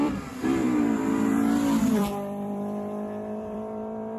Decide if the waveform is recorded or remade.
remade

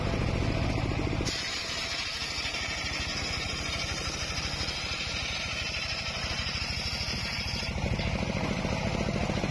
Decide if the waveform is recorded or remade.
recorded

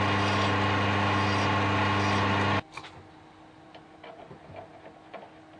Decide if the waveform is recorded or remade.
recorded